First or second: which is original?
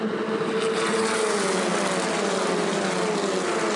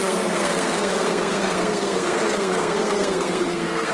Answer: first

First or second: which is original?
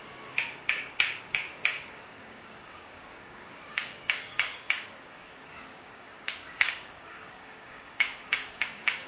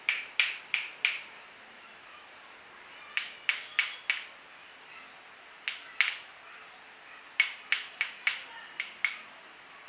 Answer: second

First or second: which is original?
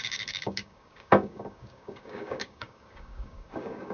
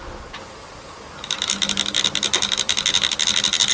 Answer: second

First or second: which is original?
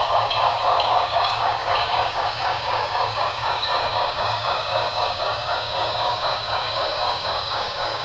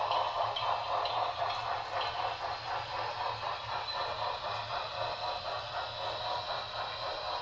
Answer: second